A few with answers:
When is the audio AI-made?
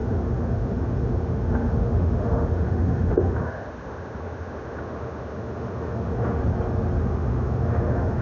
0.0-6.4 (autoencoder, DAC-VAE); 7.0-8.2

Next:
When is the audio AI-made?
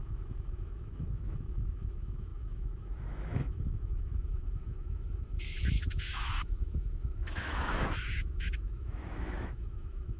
0.0-10.2 (autoencoder, DAC-VAE)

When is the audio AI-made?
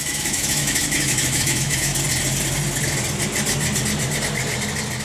0.0-1.9 (autoencoder, DAC-VAE)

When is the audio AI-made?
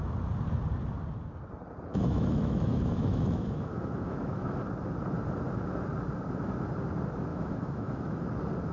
1.9-4.6 (autoencoder, DAC-VAE); 7.3-8.2